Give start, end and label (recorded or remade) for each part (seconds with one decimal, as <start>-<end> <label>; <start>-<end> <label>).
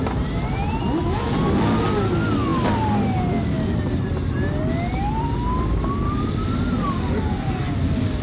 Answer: 0.0-8.2 recorded